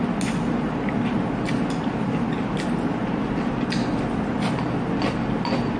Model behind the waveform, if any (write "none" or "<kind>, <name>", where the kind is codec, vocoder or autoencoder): none